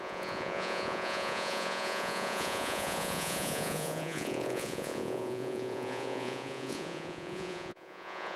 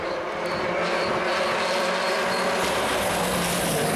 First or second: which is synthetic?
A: first